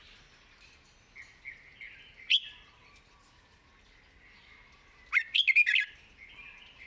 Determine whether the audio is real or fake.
real